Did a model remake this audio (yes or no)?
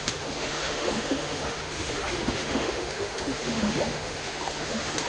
yes